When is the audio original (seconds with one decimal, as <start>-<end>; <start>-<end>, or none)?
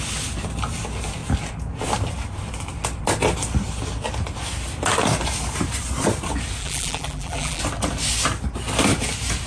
0.0-6.6; 7.6-9.5